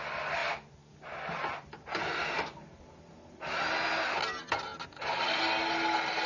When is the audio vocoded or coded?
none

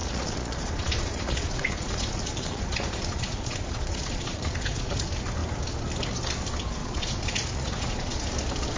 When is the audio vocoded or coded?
0.0-5.0 (vocoder, Vocos); 6.8-8.2

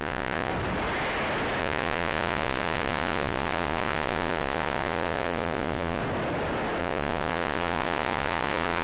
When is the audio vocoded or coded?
0.0-0.5 (vocoder, Vocos); 1.6-6.0; 6.8-8.8

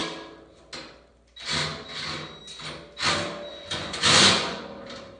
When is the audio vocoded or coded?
3.5-4.6 (vocoder, Vocos)